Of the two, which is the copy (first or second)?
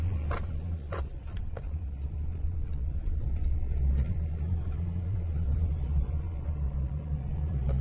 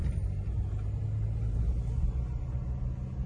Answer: first